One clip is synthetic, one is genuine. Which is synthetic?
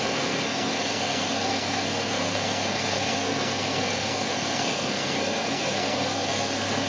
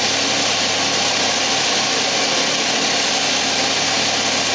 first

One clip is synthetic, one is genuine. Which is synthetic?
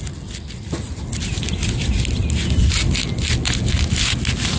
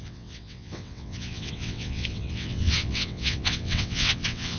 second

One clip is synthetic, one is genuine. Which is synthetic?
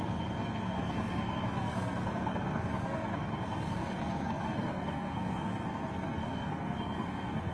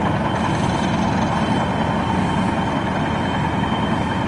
first